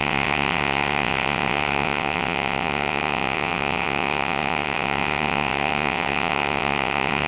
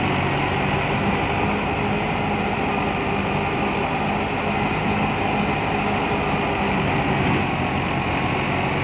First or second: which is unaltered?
second